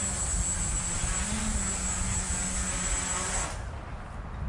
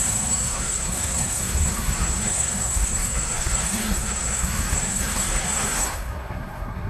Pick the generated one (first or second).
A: second